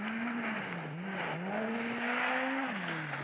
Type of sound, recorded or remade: recorded